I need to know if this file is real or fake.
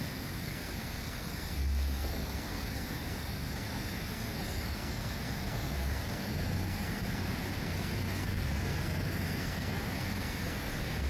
fake